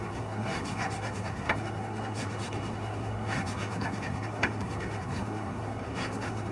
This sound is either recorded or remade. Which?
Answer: remade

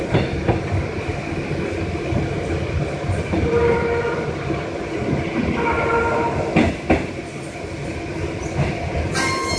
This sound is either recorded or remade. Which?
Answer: recorded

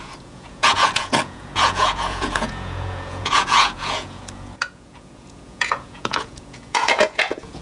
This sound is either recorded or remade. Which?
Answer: remade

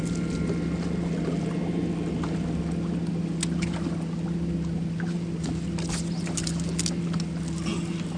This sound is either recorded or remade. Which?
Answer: recorded